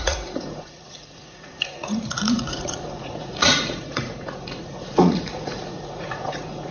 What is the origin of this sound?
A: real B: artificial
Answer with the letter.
B